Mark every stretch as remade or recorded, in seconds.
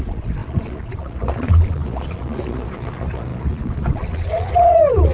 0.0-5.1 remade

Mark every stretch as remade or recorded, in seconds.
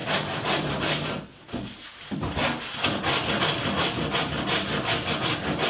0.0-5.7 recorded